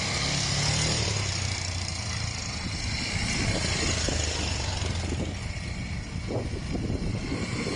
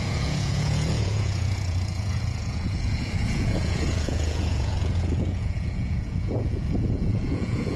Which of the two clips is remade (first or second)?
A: second